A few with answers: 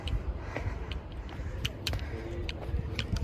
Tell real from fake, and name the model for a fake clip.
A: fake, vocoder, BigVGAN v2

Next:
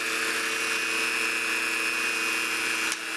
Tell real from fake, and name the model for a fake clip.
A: real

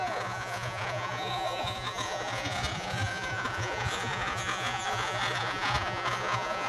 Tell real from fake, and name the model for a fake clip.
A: fake, vocoder, Vocos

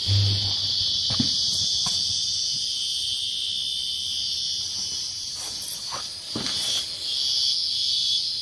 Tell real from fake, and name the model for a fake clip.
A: real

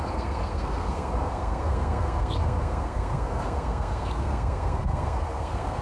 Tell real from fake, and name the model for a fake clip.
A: fake, codec, SNAC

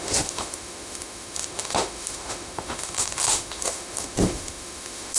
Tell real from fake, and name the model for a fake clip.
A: fake, autoencoder, DAC-VAE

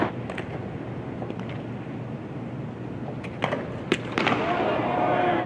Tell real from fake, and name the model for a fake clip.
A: real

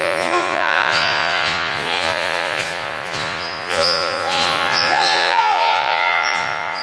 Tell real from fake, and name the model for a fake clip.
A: fake, vocoder, Vocos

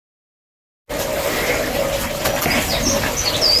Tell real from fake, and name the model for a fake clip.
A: real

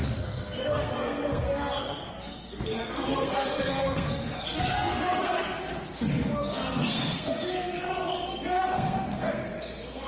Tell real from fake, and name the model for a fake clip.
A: fake, codec, SNAC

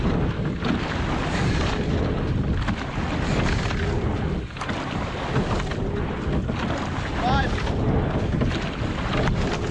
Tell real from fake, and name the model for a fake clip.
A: real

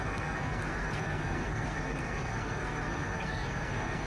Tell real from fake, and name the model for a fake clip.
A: fake, codec, SNAC